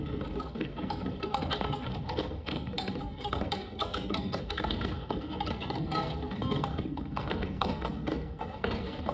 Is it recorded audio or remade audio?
remade